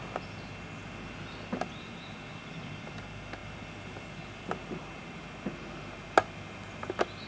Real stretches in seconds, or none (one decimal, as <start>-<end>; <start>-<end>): 0.0-7.3